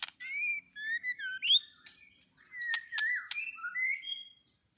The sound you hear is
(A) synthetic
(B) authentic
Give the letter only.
B